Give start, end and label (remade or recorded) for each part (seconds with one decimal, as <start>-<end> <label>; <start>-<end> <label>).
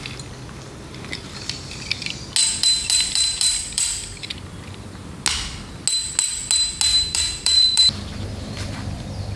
0.0-2.4 recorded; 2.4-4.8 remade; 4.8-6.9 recorded; 6.9-9.4 remade